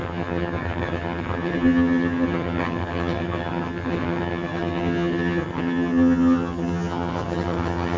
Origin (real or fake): fake